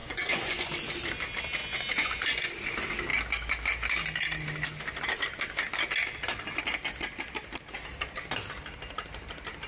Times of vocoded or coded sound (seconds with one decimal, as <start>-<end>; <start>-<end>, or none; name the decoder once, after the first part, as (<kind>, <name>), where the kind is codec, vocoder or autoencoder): 0.0-0.7 (vocoder, Vocos); 1.6-2.5